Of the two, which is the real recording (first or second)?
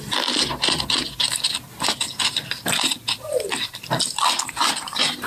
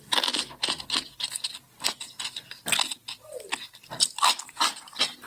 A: second